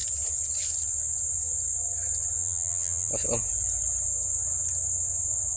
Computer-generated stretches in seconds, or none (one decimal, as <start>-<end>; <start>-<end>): 2.4-3.1